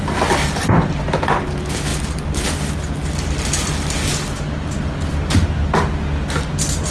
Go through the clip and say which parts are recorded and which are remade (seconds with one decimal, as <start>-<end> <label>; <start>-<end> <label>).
0.0-6.9 recorded